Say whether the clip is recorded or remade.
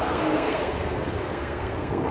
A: remade